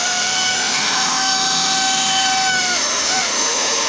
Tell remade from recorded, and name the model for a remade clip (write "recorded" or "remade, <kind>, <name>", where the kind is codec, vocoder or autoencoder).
remade, autoencoder, DAC-VAE